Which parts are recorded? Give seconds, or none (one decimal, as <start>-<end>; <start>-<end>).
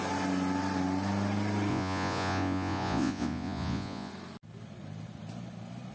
0.0-1.7; 4.1-5.9